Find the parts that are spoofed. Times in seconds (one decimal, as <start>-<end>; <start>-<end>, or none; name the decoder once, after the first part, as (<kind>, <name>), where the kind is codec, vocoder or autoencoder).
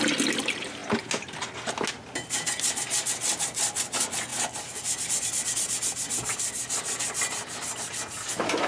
none